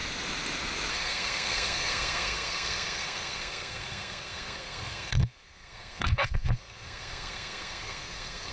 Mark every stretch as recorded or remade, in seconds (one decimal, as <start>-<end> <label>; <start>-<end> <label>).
0.0-0.9 recorded; 0.9-8.5 remade